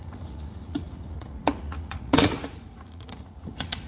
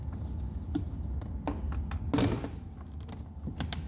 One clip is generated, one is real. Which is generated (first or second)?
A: first